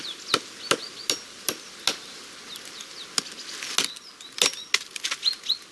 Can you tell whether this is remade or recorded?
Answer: recorded